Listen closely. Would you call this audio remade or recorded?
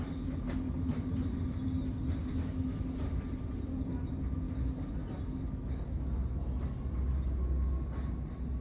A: recorded